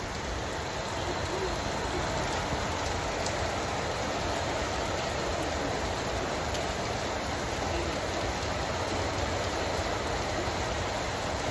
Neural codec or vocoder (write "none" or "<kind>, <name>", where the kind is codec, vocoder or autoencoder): none